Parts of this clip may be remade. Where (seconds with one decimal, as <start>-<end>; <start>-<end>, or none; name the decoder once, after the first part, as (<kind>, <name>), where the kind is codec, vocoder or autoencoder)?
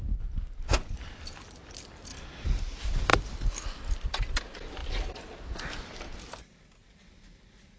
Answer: 2.1-2.6 (vocoder, BigVGAN v2); 3.1-3.9